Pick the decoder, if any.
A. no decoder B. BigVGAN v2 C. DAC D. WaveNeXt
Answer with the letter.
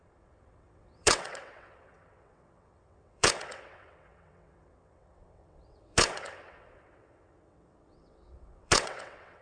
D